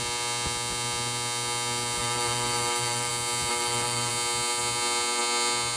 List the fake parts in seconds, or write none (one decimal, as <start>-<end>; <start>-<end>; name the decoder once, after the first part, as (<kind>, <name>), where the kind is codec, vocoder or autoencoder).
2.0-3.1 (vocoder, BigVGAN v2); 3.5-4.1